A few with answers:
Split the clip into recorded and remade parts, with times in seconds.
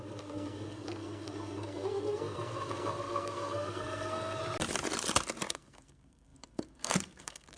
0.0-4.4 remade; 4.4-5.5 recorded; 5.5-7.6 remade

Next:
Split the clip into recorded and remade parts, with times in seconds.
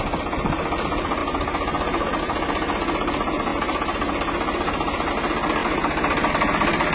0.0-6.9 recorded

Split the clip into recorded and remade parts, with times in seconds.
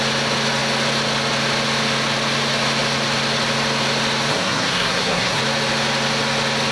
0.0-4.3 recorded; 4.3-5.4 remade; 5.4-6.7 recorded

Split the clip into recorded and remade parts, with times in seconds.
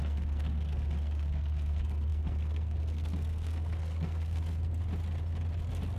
0.0-4.8 remade; 4.8-6.0 recorded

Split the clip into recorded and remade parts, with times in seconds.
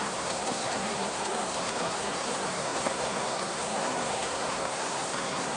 0.0-5.6 remade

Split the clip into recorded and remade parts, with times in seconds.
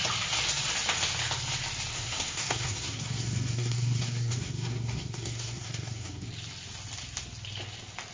0.0-1.9 recorded; 1.9-6.3 remade; 6.3-8.1 recorded